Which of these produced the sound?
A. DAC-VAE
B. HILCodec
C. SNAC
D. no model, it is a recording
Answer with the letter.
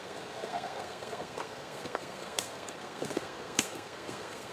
C